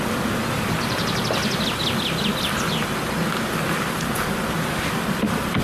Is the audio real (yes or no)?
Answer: yes